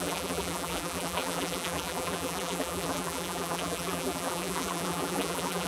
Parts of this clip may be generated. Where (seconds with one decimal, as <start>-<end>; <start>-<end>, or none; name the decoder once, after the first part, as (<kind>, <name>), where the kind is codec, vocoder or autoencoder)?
0.0-5.7 (vocoder, BigVGAN v2)